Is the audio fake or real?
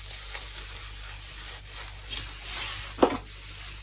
real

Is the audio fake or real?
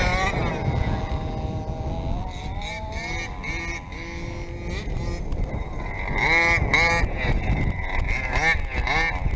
real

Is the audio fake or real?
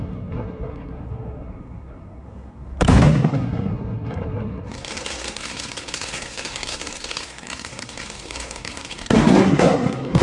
fake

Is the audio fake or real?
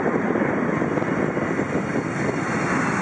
real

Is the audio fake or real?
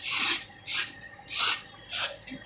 fake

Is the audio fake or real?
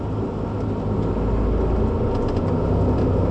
real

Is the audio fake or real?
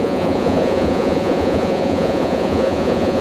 fake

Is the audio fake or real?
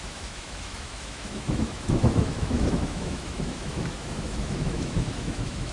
fake